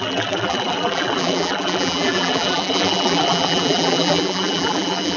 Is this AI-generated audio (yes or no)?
yes